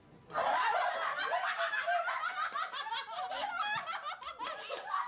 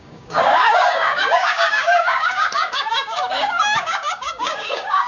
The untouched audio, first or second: first